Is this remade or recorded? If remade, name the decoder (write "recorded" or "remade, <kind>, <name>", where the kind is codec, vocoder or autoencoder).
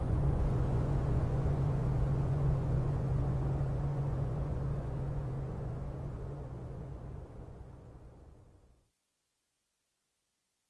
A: remade, vocoder, Vocos